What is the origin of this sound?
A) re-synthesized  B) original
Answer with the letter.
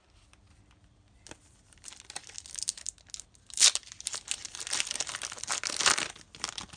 B